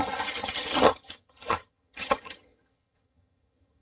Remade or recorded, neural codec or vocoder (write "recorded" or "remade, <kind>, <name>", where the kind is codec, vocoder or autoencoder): remade, vocoder, HiFi-GAN